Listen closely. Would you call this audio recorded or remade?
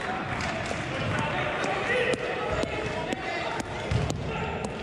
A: recorded